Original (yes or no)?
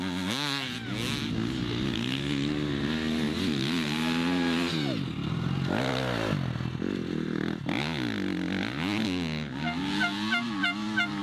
yes